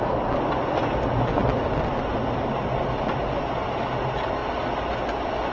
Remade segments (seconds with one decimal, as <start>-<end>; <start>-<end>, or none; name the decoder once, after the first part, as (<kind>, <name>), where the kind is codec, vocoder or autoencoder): none